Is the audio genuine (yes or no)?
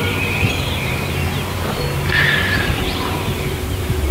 no